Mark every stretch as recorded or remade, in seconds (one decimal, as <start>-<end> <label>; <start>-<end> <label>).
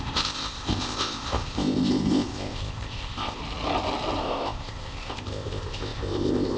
0.0-3.4 remade; 3.4-4.2 recorded; 4.2-6.6 remade